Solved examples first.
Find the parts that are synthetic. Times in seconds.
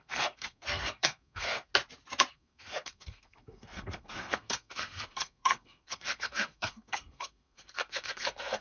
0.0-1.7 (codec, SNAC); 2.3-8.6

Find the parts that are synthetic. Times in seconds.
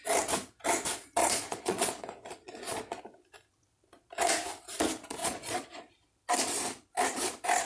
1.2-3.0 (vocoder, Vocos); 5.2-5.9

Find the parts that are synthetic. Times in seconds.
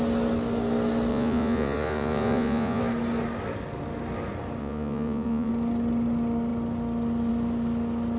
1.1-2.8 (vocoder, Vocos); 4.6-5.5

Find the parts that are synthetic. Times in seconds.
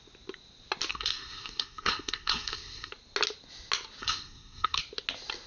0.9-2.9 (codec, SNAC); 4.0-4.8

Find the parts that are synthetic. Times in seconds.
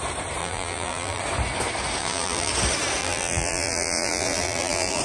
0.4-1.2 (vocoder, BigVGAN v2); 2.0-2.5; 3.0-5.0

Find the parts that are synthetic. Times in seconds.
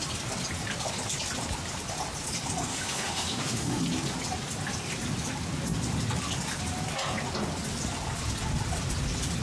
2.7-3.8 (autoencoder, DAC-VAE)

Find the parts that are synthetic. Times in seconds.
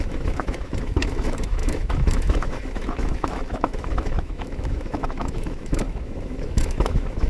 0.0-7.3 (autoencoder, DAC-VAE)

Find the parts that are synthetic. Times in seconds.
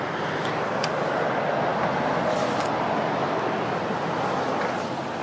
none